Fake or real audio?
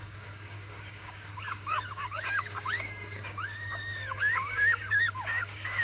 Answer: fake